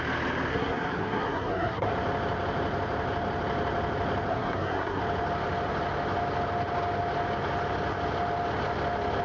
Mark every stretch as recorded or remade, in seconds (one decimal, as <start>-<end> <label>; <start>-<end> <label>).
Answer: 0.0-0.5 recorded; 0.5-1.9 remade; 1.9-4.3 recorded; 4.3-5.0 remade; 5.0-9.2 recorded